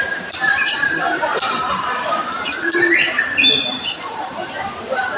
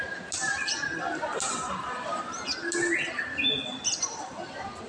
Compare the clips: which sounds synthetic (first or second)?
first